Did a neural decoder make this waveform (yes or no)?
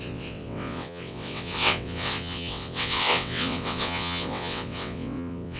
yes